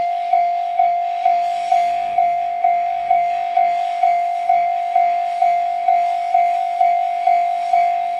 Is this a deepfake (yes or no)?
yes